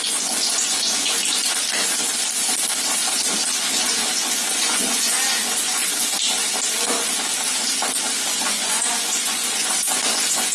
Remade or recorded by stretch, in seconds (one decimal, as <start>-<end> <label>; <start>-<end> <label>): 0.0-1.2 remade; 1.2-3.6 recorded; 3.6-5.8 remade; 5.8-8.3 recorded; 8.3-10.5 remade